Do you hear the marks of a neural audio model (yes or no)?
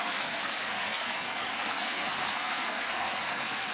yes